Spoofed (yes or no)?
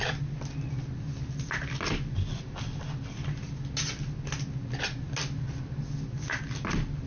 no